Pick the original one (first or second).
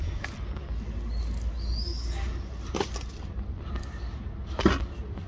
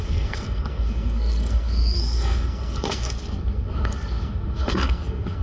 first